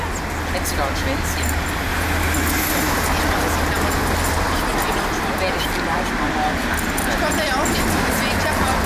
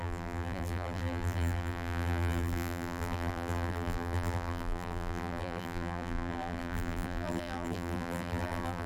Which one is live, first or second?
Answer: first